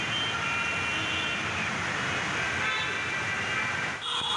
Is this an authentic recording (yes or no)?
yes